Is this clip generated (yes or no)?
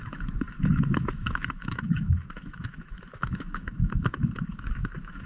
yes